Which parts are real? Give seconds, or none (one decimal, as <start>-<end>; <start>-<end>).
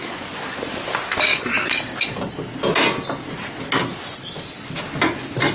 0.0-1.3; 2.3-5.5